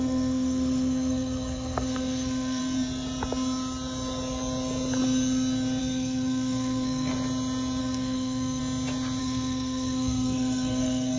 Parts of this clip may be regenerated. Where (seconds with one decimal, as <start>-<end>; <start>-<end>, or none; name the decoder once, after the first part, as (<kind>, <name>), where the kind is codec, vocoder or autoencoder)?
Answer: 0.0-2.6 (codec, SNAC); 5.8-7.1; 7.8-8.6; 9.2-11.2